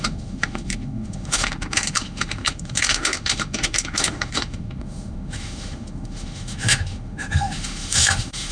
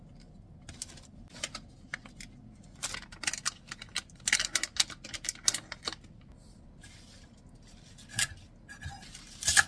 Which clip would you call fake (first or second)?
first